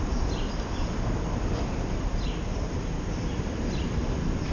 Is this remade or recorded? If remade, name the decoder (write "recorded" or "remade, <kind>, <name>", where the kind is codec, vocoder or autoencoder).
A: remade, vocoder, BigVGAN v2